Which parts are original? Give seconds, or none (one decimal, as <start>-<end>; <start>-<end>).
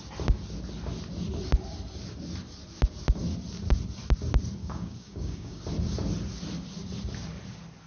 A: 0.0-4.6; 5.6-7.9